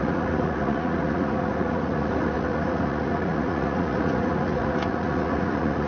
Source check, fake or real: fake